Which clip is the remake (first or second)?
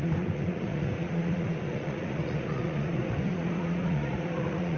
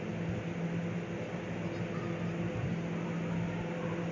first